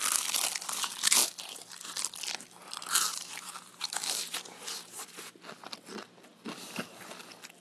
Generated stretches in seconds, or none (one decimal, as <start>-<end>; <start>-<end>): 3.1-5.4